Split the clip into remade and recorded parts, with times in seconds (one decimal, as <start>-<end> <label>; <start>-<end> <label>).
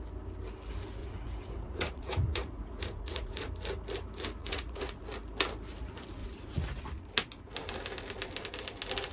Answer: 0.0-1.0 recorded; 1.0-3.5 remade; 3.5-4.4 recorded; 4.4-5.0 remade; 5.0-6.2 recorded; 6.2-6.8 remade; 6.8-9.1 recorded